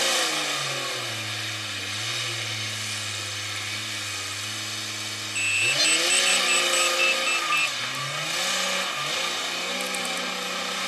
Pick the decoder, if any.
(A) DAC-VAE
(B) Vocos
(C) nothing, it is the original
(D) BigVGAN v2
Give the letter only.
C